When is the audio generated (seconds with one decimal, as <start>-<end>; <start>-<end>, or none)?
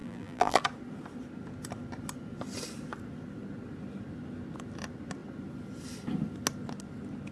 0.0-0.6